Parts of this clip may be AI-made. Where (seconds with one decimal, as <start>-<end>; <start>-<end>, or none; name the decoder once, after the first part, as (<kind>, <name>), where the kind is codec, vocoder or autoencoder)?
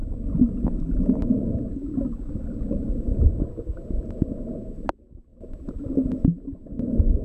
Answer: 1.2-3.5 (vocoder, BigVGAN v2)